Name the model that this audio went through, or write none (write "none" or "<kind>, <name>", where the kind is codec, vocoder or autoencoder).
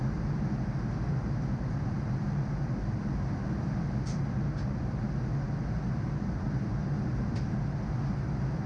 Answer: none